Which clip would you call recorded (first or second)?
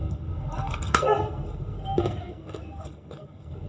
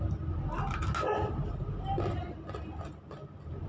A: second